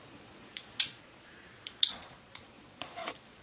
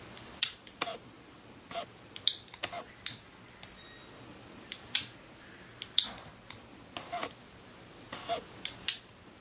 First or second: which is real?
second